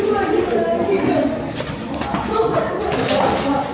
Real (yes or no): yes